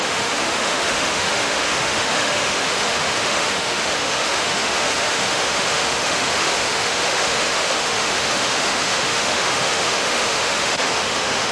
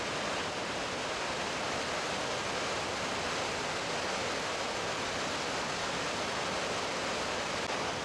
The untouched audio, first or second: second